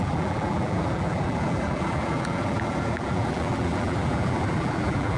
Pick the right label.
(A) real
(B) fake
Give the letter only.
B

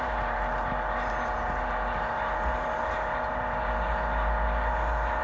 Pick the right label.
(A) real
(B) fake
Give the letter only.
A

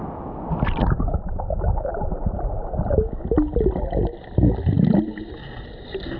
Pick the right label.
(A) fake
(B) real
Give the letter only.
B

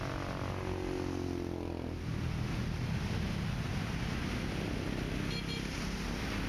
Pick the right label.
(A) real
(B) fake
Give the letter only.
A